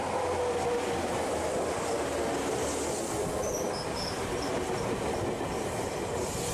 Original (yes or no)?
yes